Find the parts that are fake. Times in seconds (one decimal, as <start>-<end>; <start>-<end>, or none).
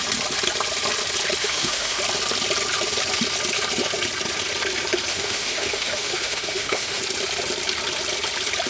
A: 1.4-2.0; 5.1-7.0